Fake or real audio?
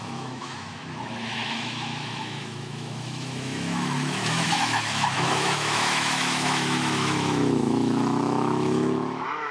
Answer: fake